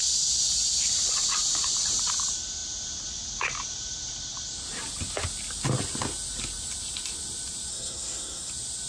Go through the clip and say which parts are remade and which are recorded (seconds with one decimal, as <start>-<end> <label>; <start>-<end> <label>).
0.0-7.7 recorded; 7.7-8.5 remade; 8.5-8.9 recorded